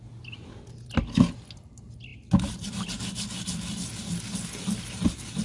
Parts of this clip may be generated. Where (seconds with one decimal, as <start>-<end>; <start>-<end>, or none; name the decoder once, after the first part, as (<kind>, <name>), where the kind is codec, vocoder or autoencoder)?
none